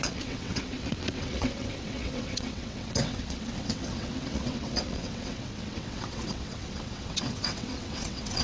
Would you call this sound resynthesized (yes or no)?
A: yes